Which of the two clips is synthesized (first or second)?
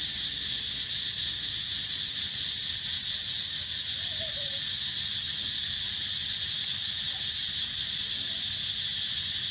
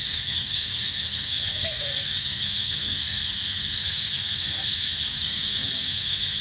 second